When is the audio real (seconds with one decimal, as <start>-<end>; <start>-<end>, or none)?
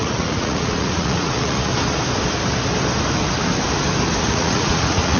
1.7-4.2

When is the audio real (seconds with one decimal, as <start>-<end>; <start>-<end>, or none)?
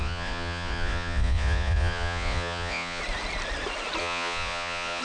3.0-4.0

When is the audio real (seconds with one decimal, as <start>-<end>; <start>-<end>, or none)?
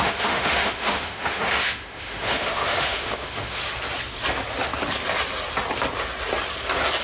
3.6-7.0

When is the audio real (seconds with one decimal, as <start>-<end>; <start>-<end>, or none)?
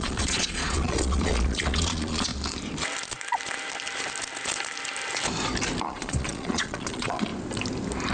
2.3-5.8; 7.3-8.1